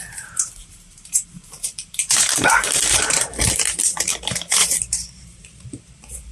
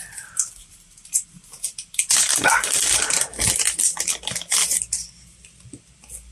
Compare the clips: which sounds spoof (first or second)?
first